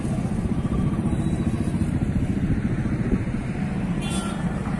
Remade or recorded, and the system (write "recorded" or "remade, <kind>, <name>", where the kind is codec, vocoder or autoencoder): remade, vocoder, BigVGAN v2